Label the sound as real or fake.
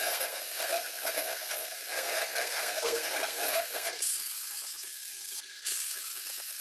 fake